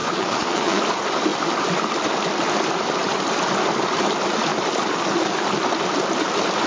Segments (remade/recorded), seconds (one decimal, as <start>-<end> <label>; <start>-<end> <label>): 0.0-0.8 remade; 0.8-6.7 recorded